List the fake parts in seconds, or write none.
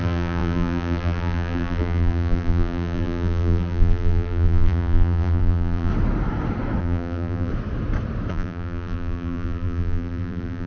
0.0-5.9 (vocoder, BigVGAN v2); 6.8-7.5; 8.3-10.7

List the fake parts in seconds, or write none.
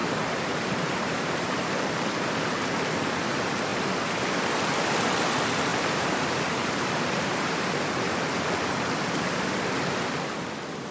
0.0-1.7 (vocoder, BigVGAN v2); 5.7-8.3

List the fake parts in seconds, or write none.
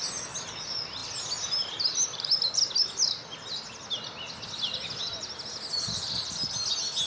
none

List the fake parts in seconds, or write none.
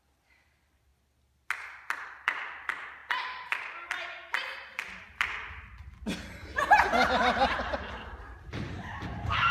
0.0-0.9 (vocoder, BigVGAN v2); 2.0-3.0; 7.9-9.5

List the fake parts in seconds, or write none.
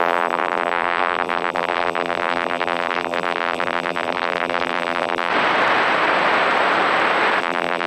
0.0-5.3 (vocoder, BigVGAN v2); 7.4-7.9